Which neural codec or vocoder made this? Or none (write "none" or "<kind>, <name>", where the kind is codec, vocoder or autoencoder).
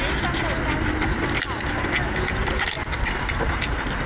none